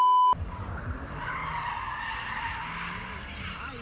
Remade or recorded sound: recorded